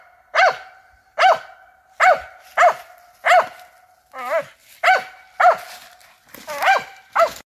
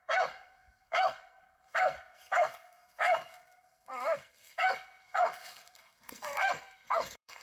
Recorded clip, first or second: first